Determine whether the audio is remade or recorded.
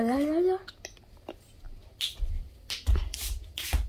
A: recorded